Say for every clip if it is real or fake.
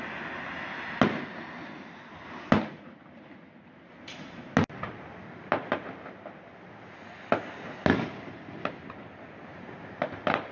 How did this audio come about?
real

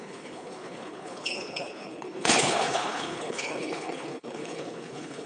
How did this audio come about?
fake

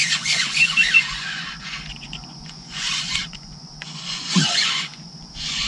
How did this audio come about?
fake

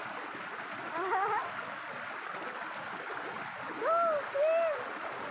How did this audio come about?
real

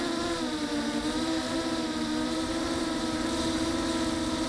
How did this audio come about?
fake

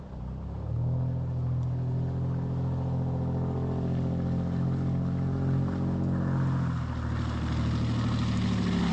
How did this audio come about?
real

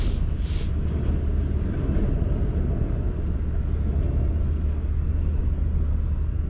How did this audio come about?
real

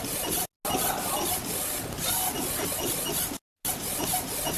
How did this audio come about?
real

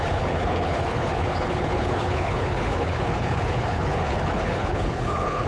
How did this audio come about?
fake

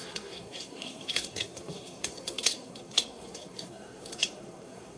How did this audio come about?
fake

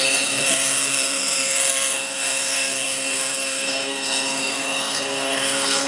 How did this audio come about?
fake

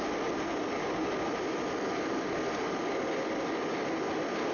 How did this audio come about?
real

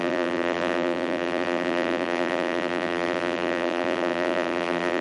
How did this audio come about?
fake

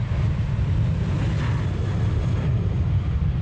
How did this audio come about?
real